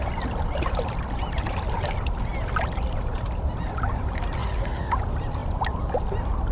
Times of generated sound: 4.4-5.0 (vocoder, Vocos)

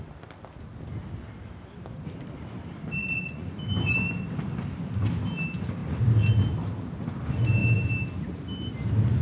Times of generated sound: 3.0-3.6 (vocoder, Vocos)

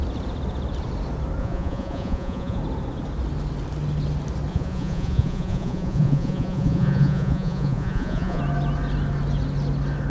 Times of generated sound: 1.4-2.6 (vocoder, Vocos); 4.5-8.4

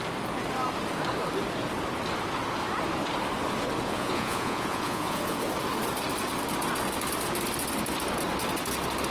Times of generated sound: 3.8-5.4 (vocoder, Vocos)